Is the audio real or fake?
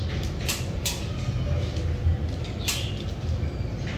real